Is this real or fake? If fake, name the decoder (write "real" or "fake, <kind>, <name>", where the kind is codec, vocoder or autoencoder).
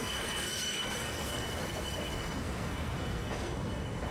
fake, codec, SNAC